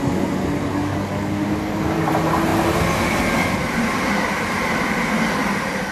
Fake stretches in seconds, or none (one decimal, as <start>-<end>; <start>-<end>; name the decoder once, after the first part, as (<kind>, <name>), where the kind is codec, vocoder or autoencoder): 0.7-2.1 (codec, DAC)